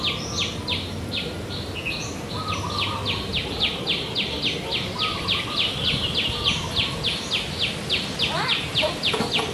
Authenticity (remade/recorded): recorded